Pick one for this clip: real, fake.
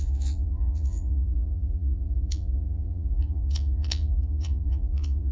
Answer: fake